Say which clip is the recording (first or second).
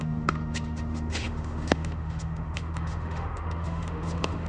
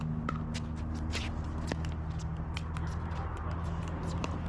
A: second